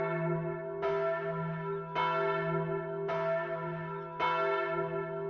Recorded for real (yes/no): yes